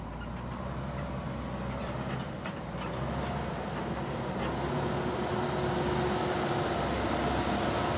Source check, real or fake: real